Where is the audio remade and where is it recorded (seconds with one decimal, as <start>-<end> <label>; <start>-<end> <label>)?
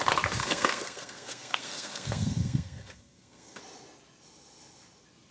0.0-0.4 recorded; 0.4-3.6 remade; 3.6-5.3 recorded